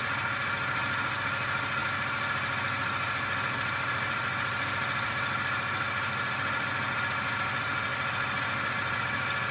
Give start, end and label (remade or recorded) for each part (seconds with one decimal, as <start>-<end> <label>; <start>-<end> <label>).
0.0-9.5 recorded